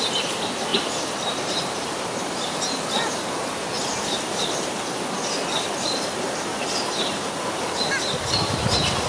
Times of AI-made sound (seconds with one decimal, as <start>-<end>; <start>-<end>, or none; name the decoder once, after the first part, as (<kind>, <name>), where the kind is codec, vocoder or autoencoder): 0.7-2.8 (vocoder, BigVGAN v2); 6.5-7.3